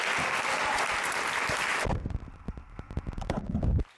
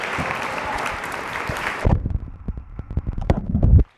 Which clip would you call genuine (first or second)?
first